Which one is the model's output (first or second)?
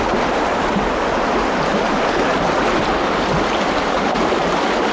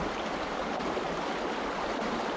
second